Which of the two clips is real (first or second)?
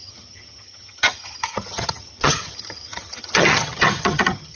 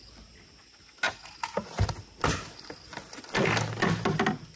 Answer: second